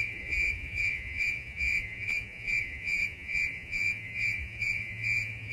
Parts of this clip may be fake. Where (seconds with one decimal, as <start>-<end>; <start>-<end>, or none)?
0.0-5.5